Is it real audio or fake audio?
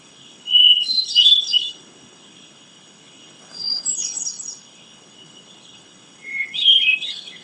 fake